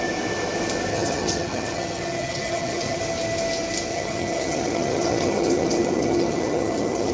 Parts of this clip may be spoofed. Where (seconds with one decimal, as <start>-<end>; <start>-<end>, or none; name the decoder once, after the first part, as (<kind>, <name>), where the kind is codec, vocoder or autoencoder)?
0.9-3.0 (vocoder, HiFi-GAN); 3.9-7.1